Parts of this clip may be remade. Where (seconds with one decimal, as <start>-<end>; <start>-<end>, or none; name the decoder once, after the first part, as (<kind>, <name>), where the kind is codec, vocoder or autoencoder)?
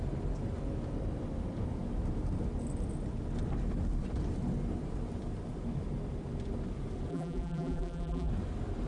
7.1-8.3 (vocoder, BigVGAN v2)